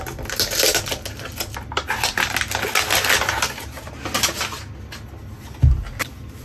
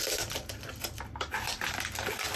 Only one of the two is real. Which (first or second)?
first